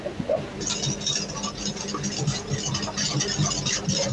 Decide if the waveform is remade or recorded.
recorded